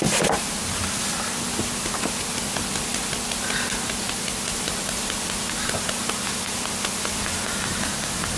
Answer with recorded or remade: recorded